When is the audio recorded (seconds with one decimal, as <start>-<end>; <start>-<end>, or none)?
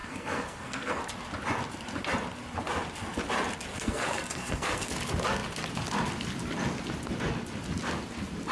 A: 1.0-3.7; 4.9-8.5